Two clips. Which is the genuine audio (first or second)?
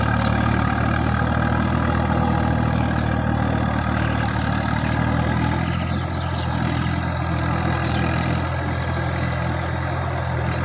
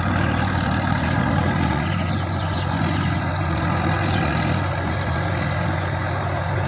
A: first